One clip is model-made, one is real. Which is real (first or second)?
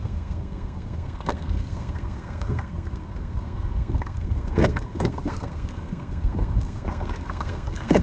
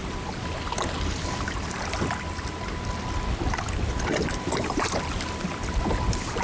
second